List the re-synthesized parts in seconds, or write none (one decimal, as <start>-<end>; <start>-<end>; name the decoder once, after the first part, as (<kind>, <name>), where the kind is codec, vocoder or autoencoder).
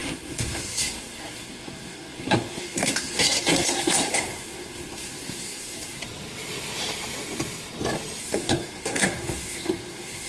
0.0-6.0 (codec, SNAC); 8.2-10.3